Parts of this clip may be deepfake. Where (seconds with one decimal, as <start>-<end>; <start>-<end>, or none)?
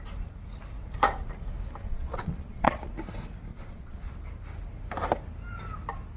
1.8-2.9; 3.5-4.1